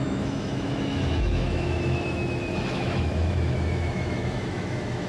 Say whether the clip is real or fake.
fake